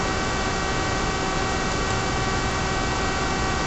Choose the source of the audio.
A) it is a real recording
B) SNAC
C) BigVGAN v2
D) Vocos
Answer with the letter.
A